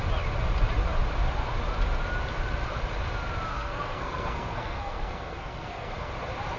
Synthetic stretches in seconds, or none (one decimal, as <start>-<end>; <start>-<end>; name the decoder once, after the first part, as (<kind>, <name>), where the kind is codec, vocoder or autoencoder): 3.5-6.1 (codec, SNAC)